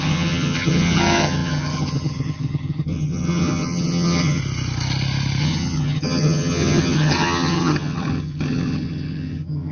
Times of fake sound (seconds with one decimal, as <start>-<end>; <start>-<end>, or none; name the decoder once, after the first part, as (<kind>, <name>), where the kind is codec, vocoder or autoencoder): 0.0-4.4 (vocoder, HiFi-GAN); 5.4-9.7